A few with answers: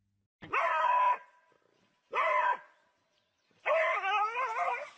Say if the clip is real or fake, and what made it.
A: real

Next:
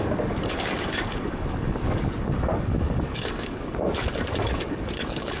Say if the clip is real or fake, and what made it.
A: fake, codec, DAC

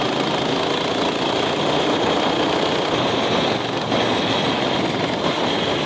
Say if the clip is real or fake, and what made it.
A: real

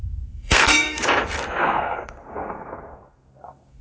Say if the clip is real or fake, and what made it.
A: fake, codec, SNAC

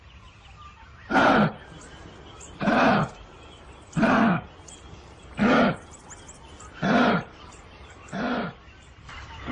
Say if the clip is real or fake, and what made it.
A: real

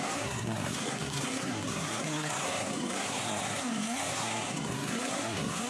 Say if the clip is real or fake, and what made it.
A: fake, codec, SNAC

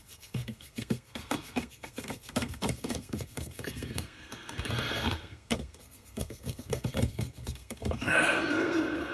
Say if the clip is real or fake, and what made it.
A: fake, codec, SNAC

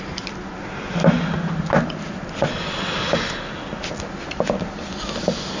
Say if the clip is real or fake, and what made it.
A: real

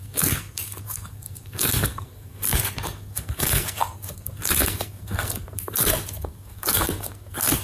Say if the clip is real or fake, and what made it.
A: fake, codec, SNAC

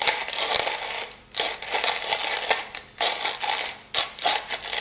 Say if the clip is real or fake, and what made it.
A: real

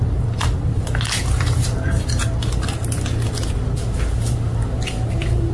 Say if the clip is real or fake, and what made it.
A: real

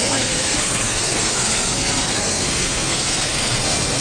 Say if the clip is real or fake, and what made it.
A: fake, codec, SNAC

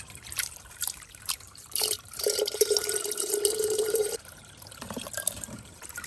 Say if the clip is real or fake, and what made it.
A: fake, vocoder, BigVGAN v2